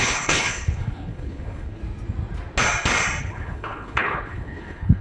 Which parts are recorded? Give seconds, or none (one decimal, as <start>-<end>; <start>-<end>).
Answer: 1.8-3.2